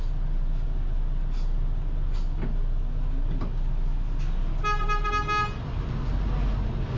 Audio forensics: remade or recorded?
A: recorded